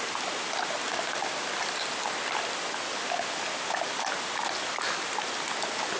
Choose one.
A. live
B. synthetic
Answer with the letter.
A